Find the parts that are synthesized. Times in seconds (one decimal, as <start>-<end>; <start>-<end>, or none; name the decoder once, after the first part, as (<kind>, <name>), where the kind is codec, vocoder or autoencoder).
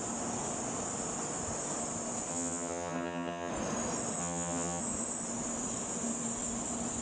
2.3-3.5 (vocoder, HiFi-GAN); 4.2-4.8